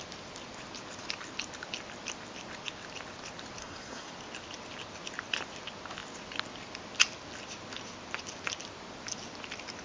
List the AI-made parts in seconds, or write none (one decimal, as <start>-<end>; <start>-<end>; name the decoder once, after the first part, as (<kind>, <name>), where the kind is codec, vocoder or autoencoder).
3.6-4.1 (codec, SNAC)